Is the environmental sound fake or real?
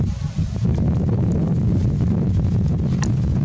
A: real